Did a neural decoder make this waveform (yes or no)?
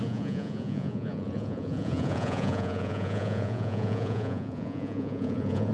yes